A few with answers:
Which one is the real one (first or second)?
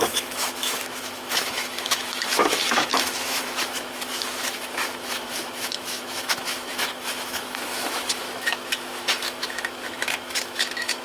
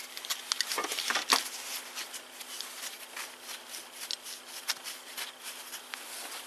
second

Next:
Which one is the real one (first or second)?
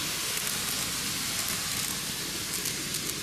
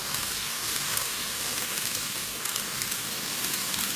first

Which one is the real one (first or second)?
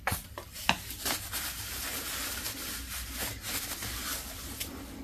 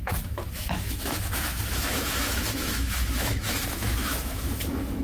first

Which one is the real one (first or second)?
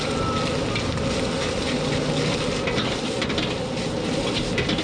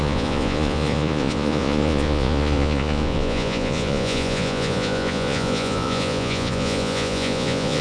first